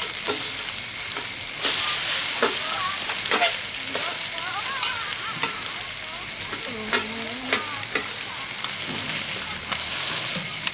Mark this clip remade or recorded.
recorded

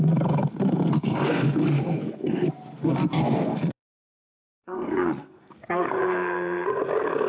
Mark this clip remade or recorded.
remade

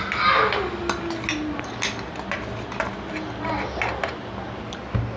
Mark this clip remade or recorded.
recorded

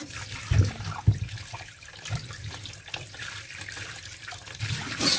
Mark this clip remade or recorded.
recorded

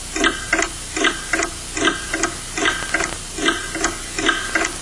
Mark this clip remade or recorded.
recorded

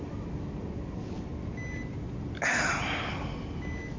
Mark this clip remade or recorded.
recorded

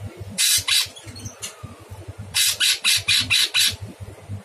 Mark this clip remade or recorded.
recorded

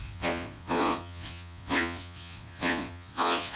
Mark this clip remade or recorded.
remade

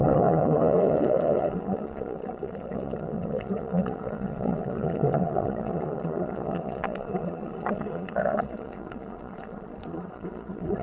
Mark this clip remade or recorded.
remade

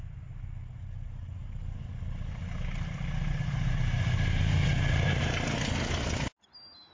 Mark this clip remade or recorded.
recorded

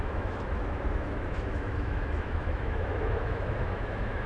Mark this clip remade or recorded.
remade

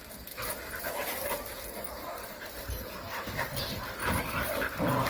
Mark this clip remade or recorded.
recorded